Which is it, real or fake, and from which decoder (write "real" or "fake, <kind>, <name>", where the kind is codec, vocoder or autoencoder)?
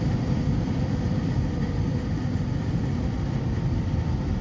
real